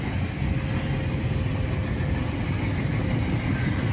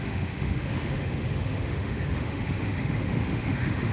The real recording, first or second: first